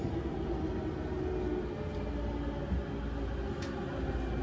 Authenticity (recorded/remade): recorded